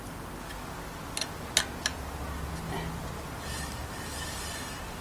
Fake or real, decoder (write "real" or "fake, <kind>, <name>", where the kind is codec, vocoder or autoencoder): real